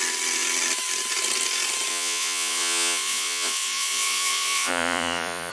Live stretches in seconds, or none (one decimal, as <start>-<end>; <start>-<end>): 0.0-1.9